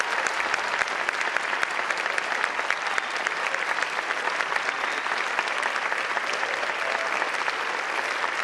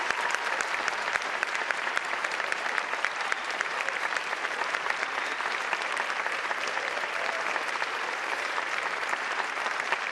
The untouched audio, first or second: first